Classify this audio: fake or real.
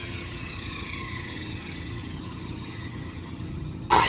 fake